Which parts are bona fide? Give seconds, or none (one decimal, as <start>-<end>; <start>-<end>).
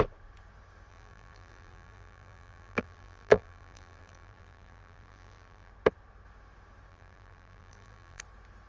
0.0-0.9; 5.7-6.9; 8.2-8.7